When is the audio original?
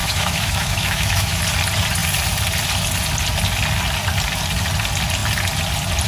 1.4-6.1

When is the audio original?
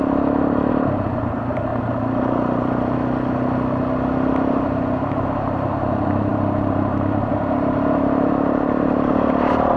0.0-0.7; 1.7-4.6